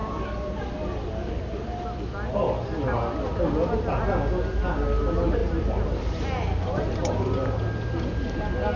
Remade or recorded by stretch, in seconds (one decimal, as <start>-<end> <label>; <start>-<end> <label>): 0.0-8.8 recorded